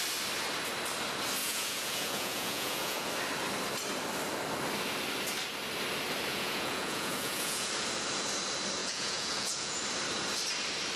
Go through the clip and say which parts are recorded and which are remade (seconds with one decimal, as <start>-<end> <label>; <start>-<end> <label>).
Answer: 0.0-1.4 recorded; 1.4-3.1 remade; 3.1-6.3 recorded; 6.3-7.7 remade; 7.7-8.8 recorded; 8.8-9.8 remade; 9.8-11.0 recorded